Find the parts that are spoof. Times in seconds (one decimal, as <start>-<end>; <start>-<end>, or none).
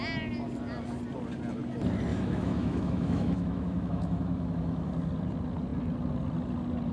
2.1-4.9